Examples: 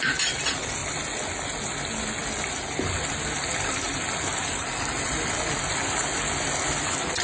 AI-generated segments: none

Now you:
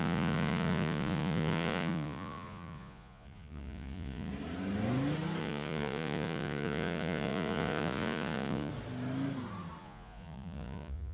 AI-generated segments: 0.0-4.3 (vocoder, Vocos); 5.4-8.7; 9.8-11.1

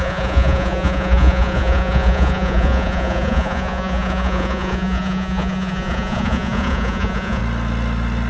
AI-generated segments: 0.0-7.4 (vocoder, Vocos)

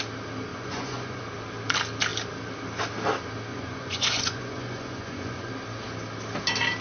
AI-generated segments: 0.5-1.2 (vocoder, Vocos); 3.5-5.5